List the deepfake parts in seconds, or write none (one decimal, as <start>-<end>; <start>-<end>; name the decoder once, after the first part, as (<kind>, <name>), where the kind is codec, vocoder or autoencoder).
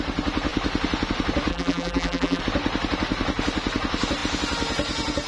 1.5-2.4 (vocoder, BigVGAN v2)